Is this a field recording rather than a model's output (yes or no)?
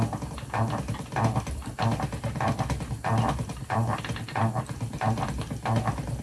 yes